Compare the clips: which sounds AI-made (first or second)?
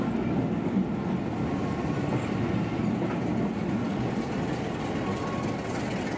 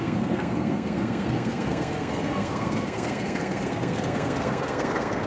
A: second